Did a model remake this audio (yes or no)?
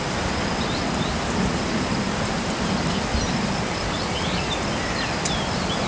no